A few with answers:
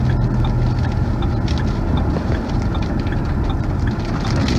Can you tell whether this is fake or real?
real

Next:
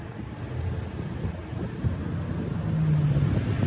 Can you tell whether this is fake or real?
real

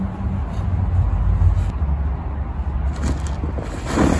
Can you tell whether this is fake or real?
real